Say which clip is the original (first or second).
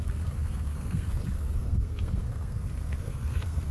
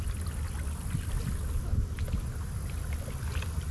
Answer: second